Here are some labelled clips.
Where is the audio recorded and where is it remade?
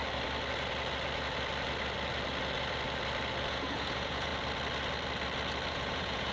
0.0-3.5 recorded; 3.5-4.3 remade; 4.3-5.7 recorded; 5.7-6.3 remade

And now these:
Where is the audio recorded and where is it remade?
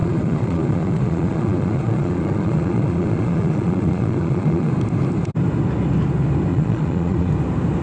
0.0-4.7 remade; 4.7-6.5 recorded; 6.5-7.3 remade; 7.3-7.8 recorded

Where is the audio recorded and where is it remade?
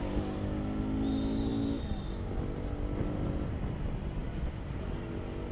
0.0-5.5 recorded